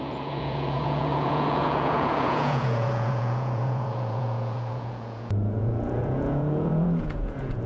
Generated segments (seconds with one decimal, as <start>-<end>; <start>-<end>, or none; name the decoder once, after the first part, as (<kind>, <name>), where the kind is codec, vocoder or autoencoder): 0.0-7.7 (vocoder, Vocos)